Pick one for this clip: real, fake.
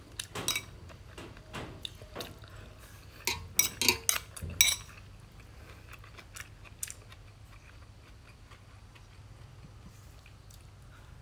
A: real